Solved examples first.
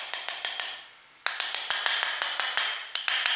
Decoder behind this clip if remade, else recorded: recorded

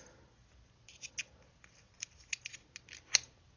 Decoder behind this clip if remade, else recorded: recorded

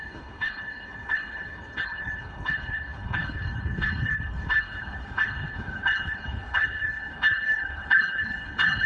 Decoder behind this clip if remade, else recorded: remade, codec, HILCodec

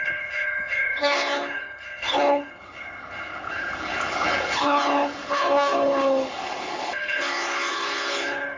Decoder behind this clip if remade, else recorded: remade, codec, HILCodec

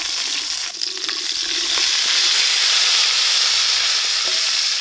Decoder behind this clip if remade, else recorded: recorded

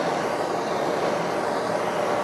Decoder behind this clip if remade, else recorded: recorded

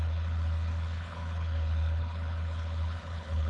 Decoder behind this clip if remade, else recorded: remade, codec, HILCodec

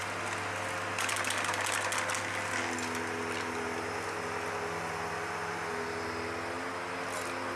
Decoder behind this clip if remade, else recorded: recorded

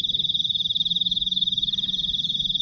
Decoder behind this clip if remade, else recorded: recorded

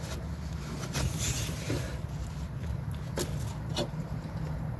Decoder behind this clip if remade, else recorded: recorded